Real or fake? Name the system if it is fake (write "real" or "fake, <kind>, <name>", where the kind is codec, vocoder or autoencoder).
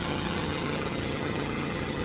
fake, vocoder, HiFi-GAN